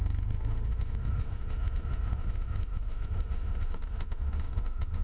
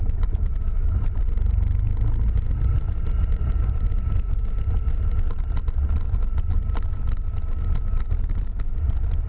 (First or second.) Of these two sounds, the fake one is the first